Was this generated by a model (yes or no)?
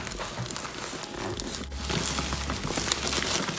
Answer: no